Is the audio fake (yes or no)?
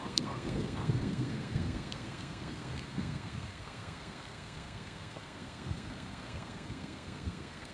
yes